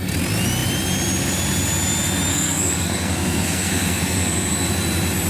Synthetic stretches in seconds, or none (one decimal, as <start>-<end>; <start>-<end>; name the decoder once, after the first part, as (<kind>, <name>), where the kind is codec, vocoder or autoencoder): 2.3-4.7 (codec, SNAC)